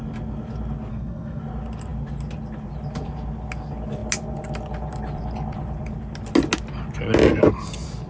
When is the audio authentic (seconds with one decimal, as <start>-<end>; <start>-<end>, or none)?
0.0-0.9; 1.4-8.1